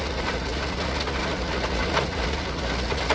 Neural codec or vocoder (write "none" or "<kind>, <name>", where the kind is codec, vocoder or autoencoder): vocoder, Vocos